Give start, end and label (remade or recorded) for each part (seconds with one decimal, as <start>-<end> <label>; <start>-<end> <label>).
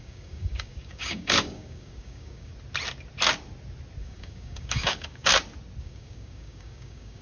0.0-2.5 remade; 2.5-4.0 recorded; 4.0-5.3 remade; 5.3-5.8 recorded; 5.8-7.2 remade